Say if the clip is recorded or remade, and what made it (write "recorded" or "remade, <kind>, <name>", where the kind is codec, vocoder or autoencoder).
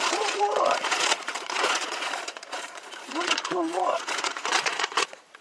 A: remade, vocoder, Vocos